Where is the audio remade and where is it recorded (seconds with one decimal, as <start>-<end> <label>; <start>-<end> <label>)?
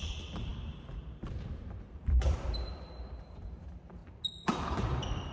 0.0-4.0 remade; 4.0-4.6 recorded; 4.6-5.3 remade